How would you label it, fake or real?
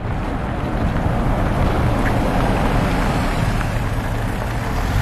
fake